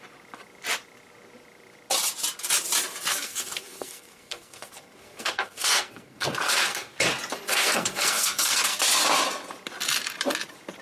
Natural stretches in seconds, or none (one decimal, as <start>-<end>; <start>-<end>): 0.0-3.1; 7.0-7.5; 8.8-10.8